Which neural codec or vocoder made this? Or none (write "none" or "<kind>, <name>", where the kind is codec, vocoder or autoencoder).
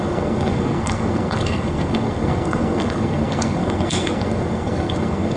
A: codec, SNAC